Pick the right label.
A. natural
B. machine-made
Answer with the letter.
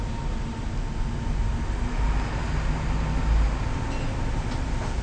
A